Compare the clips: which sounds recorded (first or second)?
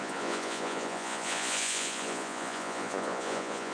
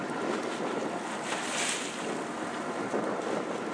second